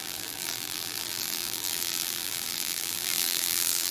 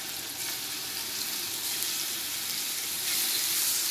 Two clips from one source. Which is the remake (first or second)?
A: first